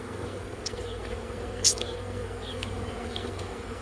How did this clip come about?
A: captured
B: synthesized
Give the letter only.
B